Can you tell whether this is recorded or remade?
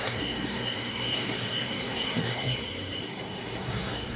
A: remade